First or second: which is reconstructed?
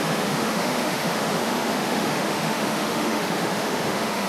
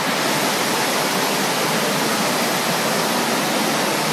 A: first